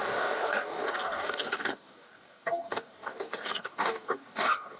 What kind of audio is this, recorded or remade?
remade